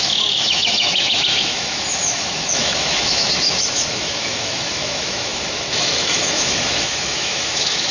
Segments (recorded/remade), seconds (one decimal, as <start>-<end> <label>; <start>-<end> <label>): 0.0-7.9 remade